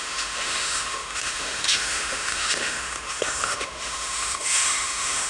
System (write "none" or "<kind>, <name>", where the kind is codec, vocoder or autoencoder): autoencoder, DAC-VAE